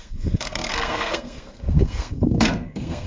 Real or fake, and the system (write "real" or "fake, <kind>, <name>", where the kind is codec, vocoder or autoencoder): fake, codec, SNAC